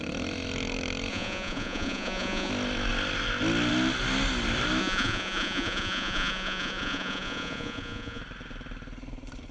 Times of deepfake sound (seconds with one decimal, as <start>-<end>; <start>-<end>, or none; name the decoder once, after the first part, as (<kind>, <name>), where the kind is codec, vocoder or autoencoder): 1.1-2.5 (vocoder, Vocos); 4.8-8.2